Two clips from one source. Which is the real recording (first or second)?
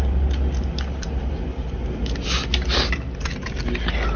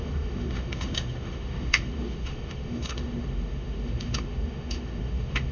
first